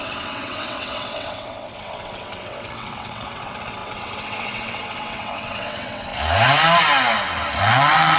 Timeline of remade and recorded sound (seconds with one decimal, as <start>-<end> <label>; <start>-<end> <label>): 0.0-6.1 remade; 6.1-7.6 recorded; 7.6-8.2 remade